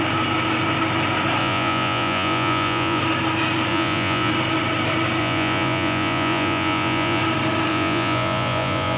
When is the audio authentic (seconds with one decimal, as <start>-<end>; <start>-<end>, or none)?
0.0-1.4; 3.0-3.7; 4.3-5.2; 7.2-7.7